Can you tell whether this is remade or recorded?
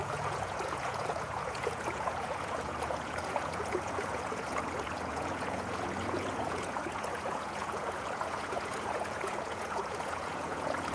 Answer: remade